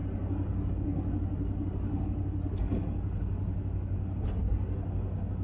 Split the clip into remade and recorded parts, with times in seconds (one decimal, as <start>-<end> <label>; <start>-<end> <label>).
0.0-5.4 recorded

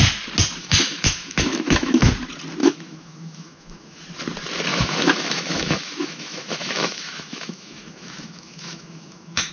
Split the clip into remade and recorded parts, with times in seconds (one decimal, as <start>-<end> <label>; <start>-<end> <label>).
0.0-0.6 recorded; 0.6-2.1 remade; 2.1-2.6 recorded; 2.6-4.0 remade; 4.0-4.7 recorded; 4.7-9.5 remade

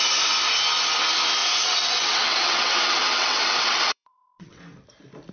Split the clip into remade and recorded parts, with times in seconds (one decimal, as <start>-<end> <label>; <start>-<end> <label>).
0.0-1.4 recorded; 1.4-4.6 remade; 4.6-5.3 recorded

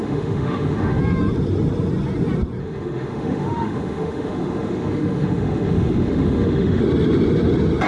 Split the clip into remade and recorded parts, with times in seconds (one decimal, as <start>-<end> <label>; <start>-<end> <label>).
0.0-1.0 remade; 1.0-2.6 recorded; 2.6-6.8 remade; 6.8-7.9 recorded

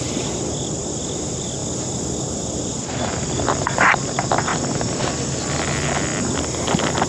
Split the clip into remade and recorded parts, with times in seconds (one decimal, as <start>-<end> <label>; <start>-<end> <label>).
0.0-7.1 recorded